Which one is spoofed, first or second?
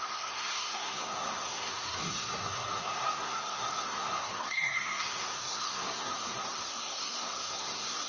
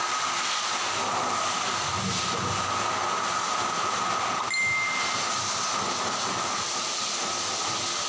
first